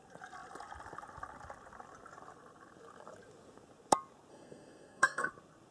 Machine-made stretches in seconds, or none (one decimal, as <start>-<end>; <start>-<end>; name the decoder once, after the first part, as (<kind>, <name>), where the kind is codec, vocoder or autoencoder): 4.3-5.3 (codec, SNAC)